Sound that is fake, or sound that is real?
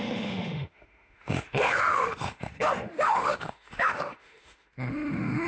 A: fake